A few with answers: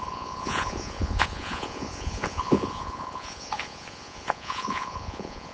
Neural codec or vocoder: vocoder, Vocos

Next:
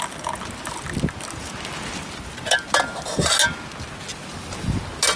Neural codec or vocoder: none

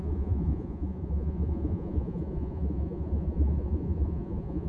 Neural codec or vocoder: vocoder, Vocos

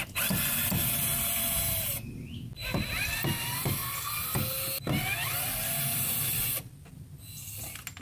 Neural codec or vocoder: none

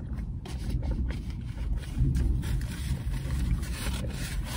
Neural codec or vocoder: vocoder, BigVGAN v2